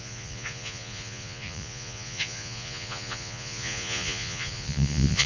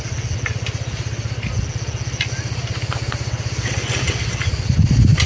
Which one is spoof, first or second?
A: first